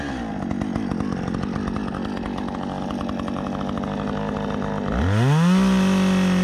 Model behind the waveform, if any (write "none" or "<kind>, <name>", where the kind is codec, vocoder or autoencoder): none